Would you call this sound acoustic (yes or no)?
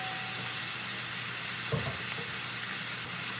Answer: yes